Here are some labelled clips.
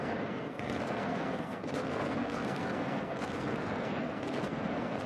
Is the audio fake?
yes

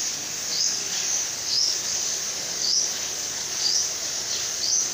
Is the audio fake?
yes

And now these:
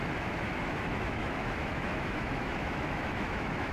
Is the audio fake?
yes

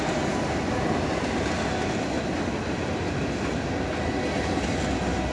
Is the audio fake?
no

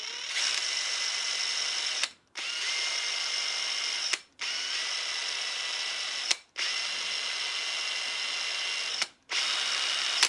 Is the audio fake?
no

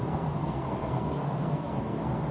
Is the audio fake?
yes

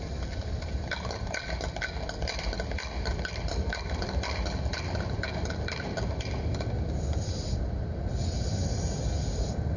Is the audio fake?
no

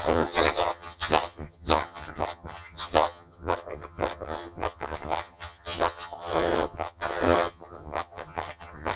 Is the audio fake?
yes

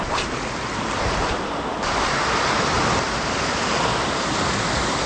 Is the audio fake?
no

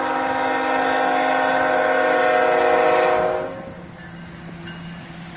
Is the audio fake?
no